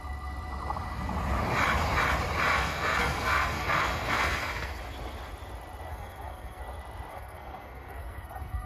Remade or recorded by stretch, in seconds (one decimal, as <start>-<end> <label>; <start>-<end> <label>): 0.0-2.5 recorded; 2.5-4.8 remade; 4.8-5.9 recorded; 5.9-6.6 remade; 6.6-7.1 recorded; 7.1-8.7 remade